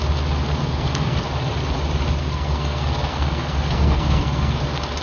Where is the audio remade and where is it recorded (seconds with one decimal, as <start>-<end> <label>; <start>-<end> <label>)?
0.0-0.6 recorded; 0.6-1.2 remade; 1.2-2.2 recorded; 2.2-4.6 remade; 4.6-5.0 recorded